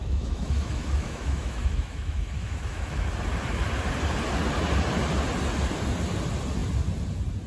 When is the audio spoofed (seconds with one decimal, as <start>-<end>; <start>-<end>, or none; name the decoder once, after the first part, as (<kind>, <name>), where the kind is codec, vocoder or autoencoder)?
0.0-3.1 (autoencoder, DAC-VAE)